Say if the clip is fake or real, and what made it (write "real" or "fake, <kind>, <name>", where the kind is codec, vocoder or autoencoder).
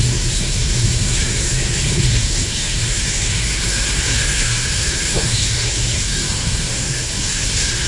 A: fake, codec, SNAC